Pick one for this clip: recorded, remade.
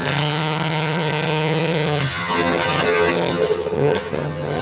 remade